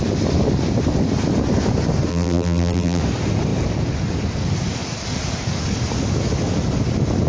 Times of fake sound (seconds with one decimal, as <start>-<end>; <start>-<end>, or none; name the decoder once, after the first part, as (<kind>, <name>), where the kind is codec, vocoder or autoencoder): 2.1-3.0 (vocoder, BigVGAN v2)